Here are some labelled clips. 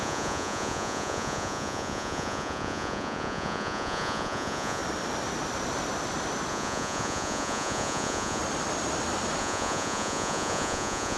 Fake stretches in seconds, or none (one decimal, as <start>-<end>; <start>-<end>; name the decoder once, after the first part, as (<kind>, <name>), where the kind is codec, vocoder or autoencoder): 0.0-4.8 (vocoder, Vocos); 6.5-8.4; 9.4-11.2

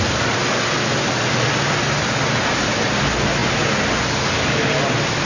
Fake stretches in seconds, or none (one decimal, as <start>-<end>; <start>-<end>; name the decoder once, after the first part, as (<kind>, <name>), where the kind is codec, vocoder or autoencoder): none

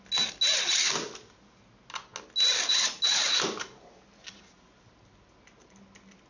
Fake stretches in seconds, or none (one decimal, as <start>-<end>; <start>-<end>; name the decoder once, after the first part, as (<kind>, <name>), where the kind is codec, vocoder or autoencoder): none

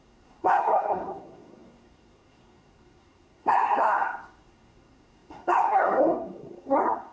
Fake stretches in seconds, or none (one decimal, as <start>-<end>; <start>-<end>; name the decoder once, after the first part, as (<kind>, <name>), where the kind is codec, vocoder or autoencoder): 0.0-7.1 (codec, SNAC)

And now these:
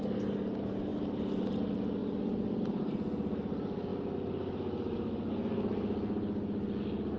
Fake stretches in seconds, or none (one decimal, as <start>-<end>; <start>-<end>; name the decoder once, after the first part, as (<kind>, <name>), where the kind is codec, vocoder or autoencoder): 0.9-1.5 (vocoder, BigVGAN v2)

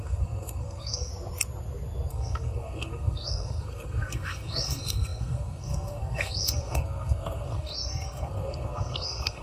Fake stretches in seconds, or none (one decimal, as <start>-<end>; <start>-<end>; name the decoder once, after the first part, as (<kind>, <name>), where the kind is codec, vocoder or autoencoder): 0.0-1.1 (codec, SNAC); 2.1-9.4

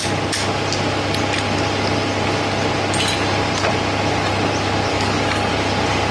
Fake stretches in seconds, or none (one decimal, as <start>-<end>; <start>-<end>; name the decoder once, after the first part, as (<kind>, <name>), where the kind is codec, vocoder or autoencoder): 4.9-5.5 (codec, DAC)

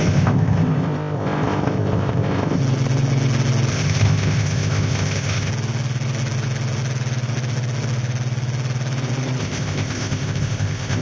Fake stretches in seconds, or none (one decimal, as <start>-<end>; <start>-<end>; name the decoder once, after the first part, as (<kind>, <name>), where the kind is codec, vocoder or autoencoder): 0.0-2.6 (codec, ZipCodec); 3.7-5.5; 9.4-11.0